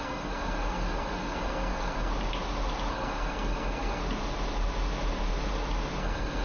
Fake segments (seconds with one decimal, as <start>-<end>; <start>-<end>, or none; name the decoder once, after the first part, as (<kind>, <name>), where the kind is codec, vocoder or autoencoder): 0.0-2.1 (codec, SNAC); 2.9-4.0; 6.0-6.4